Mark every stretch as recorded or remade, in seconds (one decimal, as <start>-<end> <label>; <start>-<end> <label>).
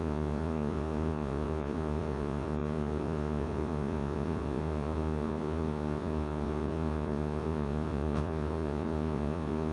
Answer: 0.0-9.7 remade